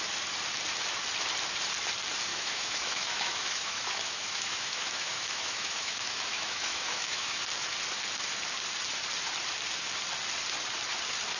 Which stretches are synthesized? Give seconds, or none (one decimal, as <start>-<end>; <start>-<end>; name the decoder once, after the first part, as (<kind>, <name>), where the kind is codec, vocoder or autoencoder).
2.3-7.4 (autoencoder, DAC-VAE)